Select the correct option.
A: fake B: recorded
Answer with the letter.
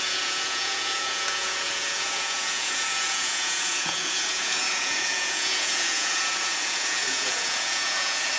A